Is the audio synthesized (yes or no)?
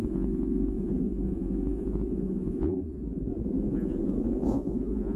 yes